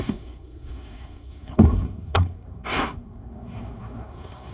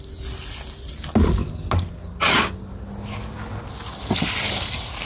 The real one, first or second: second